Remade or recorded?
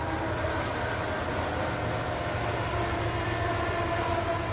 recorded